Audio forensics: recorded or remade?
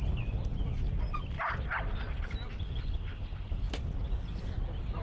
recorded